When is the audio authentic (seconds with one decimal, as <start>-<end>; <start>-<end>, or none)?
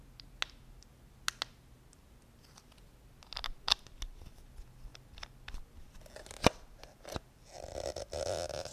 0.0-8.7